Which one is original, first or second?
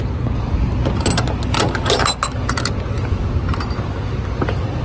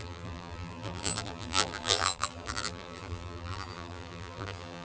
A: first